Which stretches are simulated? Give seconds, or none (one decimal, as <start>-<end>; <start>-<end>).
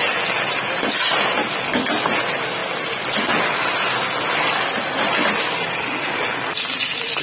none